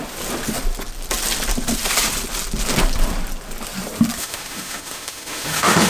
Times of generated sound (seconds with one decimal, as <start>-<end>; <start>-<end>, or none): 4.2-5.9